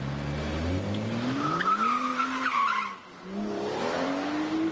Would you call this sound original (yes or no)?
yes